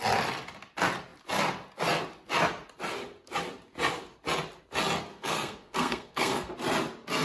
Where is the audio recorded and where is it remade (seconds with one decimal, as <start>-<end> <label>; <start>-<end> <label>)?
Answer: 0.0-5.1 recorded; 5.1-6.5 remade; 6.5-7.2 recorded